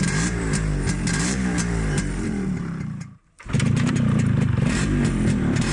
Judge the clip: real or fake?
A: fake